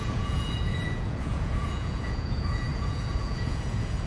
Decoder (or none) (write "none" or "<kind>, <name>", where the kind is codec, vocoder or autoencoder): vocoder, Vocos